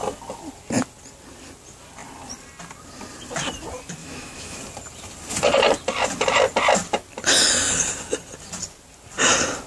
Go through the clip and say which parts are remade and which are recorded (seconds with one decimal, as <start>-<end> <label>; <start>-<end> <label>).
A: 0.0-4.0 recorded; 4.0-4.6 remade; 4.6-9.7 recorded